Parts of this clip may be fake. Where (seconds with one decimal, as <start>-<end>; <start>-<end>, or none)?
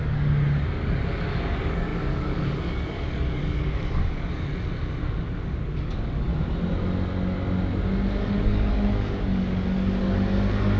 0.0-4.5; 5.5-6.3; 8.2-10.8